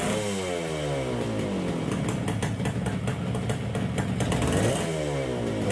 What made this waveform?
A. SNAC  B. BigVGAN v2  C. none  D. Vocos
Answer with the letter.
C